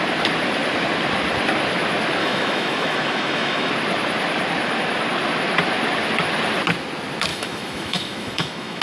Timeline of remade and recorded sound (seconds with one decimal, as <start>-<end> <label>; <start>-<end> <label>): 0.0-2.2 recorded; 2.2-3.7 remade; 3.7-7.3 recorded; 7.3-8.8 remade